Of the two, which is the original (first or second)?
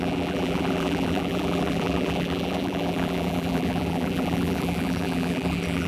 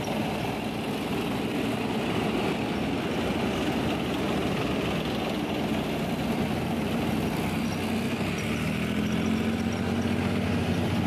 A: second